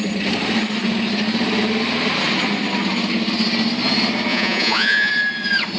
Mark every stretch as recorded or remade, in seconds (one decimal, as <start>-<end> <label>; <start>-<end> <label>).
0.0-4.3 recorded; 4.3-5.1 remade; 5.1-5.8 recorded